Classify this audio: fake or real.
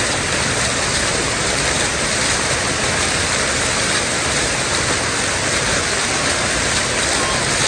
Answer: real